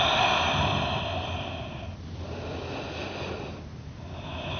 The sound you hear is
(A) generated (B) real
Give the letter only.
B